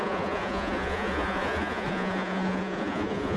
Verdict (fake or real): fake